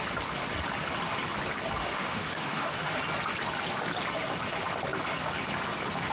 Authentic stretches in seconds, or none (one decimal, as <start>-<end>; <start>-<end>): 0.0-1.8; 3.0-6.1